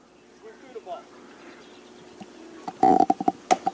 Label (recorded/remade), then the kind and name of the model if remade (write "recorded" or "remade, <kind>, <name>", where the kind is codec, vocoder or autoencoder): recorded